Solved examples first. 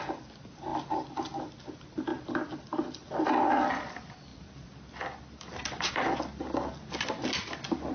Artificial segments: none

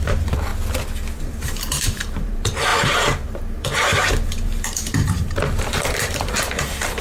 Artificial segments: 0.0-0.5 (vocoder, BigVGAN v2); 1.2-7.0

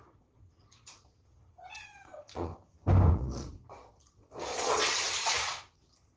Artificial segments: 0.0-2.5 (vocoder, Vocos); 3.1-6.2